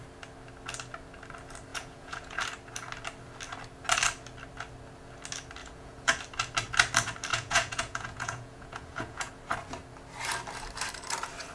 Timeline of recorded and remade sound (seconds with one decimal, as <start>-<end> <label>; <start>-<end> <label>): 0.0-1.7 recorded; 1.7-2.4 remade; 2.4-5.6 recorded; 5.6-6.2 remade; 6.2-7.3 recorded; 7.3-9.3 remade; 9.3-11.5 recorded